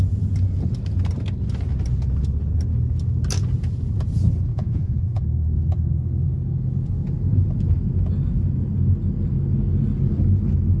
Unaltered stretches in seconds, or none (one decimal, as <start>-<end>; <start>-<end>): 0.0-4.5; 5.2-10.8